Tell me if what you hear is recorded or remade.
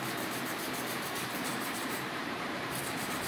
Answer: remade